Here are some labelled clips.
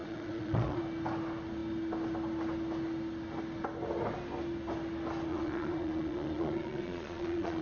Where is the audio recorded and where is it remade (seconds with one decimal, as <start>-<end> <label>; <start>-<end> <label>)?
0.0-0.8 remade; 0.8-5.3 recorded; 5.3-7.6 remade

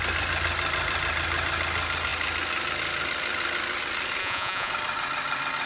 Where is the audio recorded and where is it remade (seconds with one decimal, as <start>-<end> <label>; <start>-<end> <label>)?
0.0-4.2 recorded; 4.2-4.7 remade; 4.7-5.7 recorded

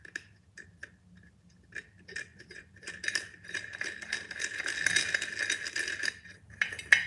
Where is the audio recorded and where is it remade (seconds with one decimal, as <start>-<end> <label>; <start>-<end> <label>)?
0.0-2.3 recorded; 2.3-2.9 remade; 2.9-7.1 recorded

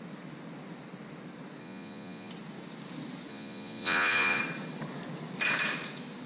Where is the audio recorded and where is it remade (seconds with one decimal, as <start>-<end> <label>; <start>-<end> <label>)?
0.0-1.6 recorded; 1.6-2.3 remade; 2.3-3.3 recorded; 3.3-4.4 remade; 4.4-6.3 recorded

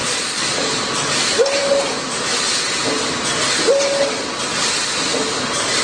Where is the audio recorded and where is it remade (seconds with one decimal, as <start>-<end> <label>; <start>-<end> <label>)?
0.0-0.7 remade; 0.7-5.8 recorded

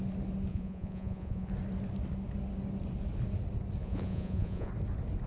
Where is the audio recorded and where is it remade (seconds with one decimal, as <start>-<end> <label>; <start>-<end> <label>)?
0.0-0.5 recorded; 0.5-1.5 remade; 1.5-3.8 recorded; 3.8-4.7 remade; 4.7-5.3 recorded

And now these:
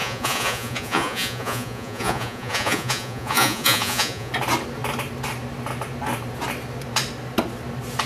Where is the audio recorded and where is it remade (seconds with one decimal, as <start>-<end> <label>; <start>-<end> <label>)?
0.0-4.3 remade; 4.3-8.1 recorded